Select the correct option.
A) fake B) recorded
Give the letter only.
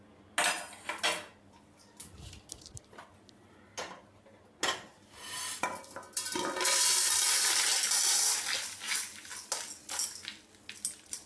B